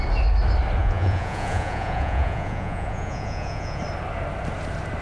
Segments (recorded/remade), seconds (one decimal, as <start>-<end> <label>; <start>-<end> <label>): 0.0-0.8 recorded; 0.8-3.8 remade; 3.8-5.0 recorded